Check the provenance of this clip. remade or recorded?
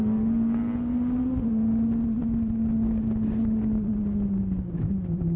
recorded